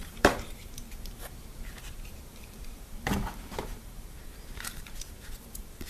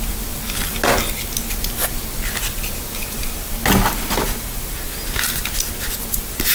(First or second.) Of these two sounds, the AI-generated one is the first